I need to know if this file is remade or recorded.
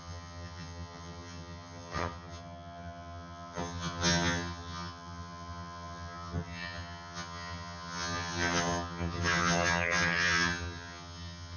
remade